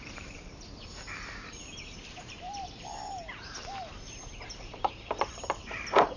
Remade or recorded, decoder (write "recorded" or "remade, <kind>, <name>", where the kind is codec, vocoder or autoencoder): remade, vocoder, BigVGAN v2